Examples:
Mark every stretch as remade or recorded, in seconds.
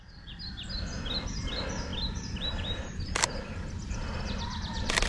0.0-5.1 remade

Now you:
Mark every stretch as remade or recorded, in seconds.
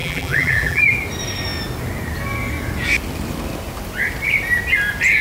0.0-0.8 remade; 0.8-5.2 recorded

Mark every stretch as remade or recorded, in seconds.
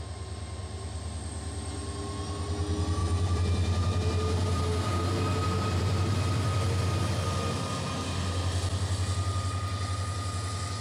0.0-0.6 recorded; 0.6-1.1 remade; 1.1-3.0 recorded; 3.0-6.3 remade; 6.3-10.8 recorded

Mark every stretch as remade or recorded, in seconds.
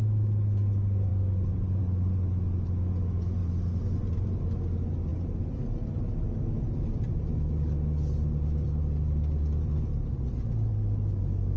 0.0-3.4 recorded; 3.4-4.4 remade; 4.4-11.6 recorded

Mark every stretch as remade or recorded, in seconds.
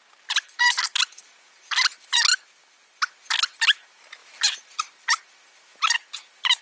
0.0-4.2 recorded; 4.2-4.8 remade; 4.8-6.6 recorded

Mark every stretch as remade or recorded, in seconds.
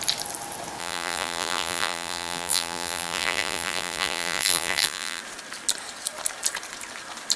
0.0-0.8 recorded; 0.8-5.2 remade; 5.2-7.4 recorded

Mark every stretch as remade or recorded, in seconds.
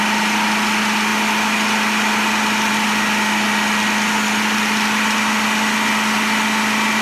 0.0-7.0 recorded